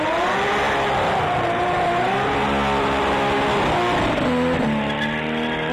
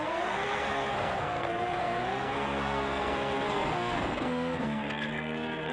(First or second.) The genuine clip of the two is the first